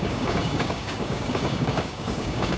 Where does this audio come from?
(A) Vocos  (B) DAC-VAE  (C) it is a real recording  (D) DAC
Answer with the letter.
D